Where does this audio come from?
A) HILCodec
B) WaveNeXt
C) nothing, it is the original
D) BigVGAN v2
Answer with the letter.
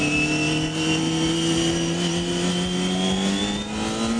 C